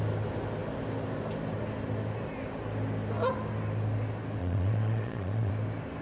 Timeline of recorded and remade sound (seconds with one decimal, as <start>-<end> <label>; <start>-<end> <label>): 0.0-4.4 recorded; 4.4-5.5 remade; 5.5-6.0 recorded